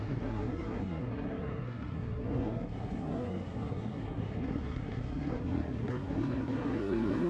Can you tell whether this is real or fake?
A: fake